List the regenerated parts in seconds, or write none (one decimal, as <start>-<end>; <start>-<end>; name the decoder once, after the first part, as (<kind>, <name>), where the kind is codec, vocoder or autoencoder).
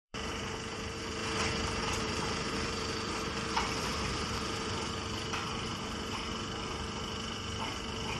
0.0-1.2 (vocoder, BigVGAN v2); 2.0-5.4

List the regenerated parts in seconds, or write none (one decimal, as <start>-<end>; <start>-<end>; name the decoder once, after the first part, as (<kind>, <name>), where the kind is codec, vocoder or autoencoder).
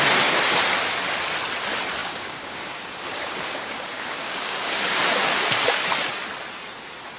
2.0-5.0 (codec, DAC)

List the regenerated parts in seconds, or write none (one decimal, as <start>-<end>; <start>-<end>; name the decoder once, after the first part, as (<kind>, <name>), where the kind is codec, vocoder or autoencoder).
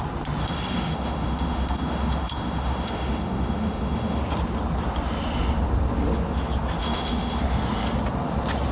0.4-4.2 (autoencoder, DAC-VAE); 6.8-7.4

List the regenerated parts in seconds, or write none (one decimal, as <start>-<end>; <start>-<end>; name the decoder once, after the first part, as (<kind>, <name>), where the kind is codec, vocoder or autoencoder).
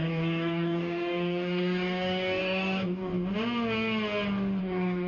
0.0-3.1 (codec, DAC); 4.6-5.1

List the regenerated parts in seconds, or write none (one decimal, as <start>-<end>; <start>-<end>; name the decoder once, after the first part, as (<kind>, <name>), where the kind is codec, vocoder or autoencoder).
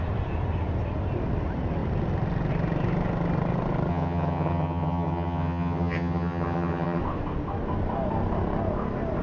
3.9-7.0 (vocoder, HiFi-GAN)